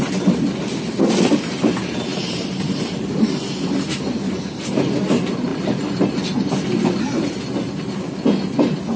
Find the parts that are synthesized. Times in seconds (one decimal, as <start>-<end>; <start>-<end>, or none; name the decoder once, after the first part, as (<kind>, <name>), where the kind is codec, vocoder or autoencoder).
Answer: 2.1-3.3 (vocoder, BigVGAN v2)